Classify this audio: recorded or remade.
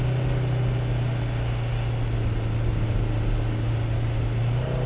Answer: recorded